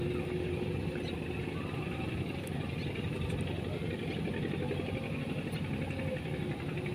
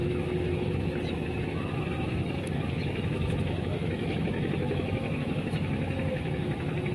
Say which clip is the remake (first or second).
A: second